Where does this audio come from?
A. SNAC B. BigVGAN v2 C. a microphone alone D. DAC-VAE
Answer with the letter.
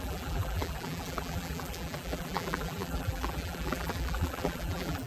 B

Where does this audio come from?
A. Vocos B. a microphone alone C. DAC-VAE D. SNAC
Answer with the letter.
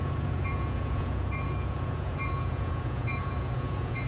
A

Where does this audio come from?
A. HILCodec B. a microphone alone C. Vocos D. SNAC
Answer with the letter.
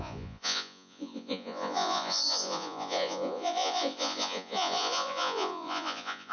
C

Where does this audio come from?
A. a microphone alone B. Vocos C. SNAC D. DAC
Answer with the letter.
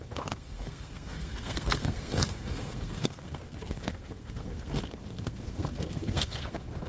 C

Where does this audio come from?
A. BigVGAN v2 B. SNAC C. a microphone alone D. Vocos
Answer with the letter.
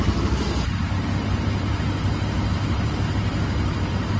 A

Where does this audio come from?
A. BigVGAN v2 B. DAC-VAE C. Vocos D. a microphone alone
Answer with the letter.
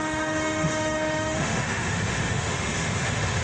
B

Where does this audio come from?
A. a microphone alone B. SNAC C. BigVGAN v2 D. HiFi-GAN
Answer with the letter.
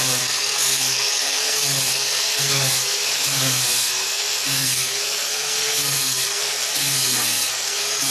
B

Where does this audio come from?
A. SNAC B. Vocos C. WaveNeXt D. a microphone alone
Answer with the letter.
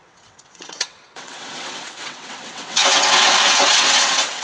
C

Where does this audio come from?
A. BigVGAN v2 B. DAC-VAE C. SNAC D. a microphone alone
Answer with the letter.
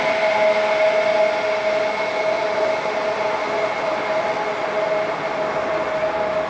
D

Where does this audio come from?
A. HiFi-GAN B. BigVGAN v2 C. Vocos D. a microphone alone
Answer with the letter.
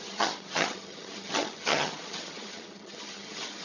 A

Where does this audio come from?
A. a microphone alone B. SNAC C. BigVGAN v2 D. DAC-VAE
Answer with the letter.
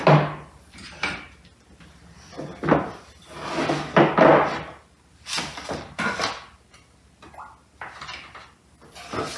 A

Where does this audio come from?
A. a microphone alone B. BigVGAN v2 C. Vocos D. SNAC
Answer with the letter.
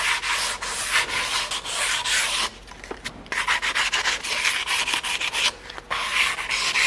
A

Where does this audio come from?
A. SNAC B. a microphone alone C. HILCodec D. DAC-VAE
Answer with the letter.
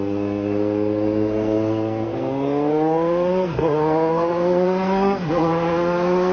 A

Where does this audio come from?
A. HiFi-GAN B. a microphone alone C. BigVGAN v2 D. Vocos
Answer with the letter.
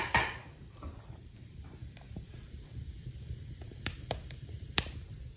C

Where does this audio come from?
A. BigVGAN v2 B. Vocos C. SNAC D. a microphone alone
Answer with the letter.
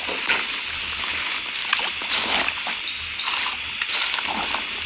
D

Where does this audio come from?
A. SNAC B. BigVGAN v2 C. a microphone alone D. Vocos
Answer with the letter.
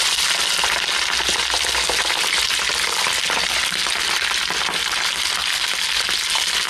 C